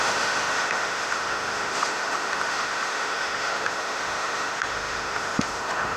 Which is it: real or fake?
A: fake